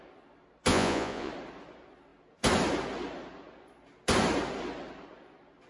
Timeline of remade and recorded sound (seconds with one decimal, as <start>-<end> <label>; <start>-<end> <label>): 0.0-0.7 recorded; 0.7-1.3 remade; 1.3-5.7 recorded